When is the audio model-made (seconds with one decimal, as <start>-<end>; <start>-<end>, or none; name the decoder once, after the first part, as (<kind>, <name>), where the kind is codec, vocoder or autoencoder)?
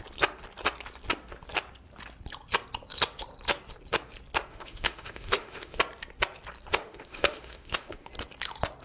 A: 4.5-5.8 (autoencoder, DAC-VAE); 6.7-8.1